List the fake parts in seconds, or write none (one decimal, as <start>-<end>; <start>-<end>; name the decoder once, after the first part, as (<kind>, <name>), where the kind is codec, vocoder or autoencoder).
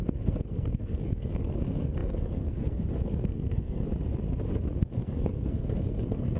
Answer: 0.0-3.9 (codec, SNAC); 4.7-6.4